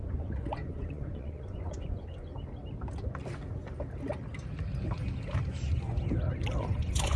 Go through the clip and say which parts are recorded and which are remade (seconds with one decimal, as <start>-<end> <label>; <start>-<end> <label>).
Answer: 0.0-2.3 remade; 2.3-6.6 recorded; 6.6-7.2 remade